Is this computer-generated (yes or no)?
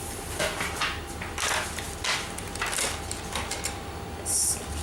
no